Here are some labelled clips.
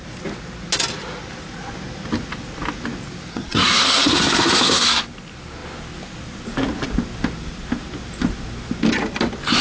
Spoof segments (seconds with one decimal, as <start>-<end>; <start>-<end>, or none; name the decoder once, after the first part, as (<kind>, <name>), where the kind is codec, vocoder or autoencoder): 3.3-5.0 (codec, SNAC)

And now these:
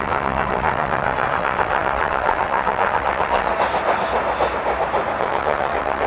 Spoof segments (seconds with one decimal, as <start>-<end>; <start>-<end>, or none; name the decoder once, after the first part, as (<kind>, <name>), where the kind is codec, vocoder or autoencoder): 0.0-3.5 (vocoder, WaveNeXt); 5.2-6.1

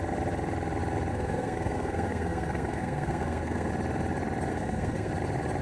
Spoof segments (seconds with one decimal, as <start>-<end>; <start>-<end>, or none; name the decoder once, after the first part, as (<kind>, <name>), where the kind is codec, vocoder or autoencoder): 1.1-3.7 (codec, SNAC); 4.5-5.1

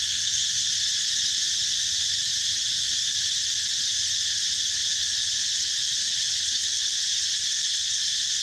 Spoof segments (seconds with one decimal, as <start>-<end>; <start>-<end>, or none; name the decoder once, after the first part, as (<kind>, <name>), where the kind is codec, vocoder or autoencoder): 0.0-0.6 (codec, SNAC)